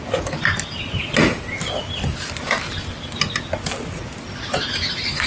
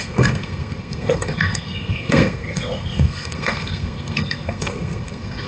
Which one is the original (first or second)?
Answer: first